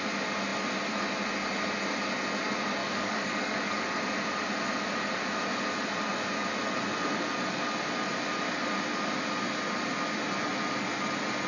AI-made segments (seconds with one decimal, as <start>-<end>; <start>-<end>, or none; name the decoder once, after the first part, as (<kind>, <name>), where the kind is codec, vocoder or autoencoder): 2.8-3.8 (codec, DAC)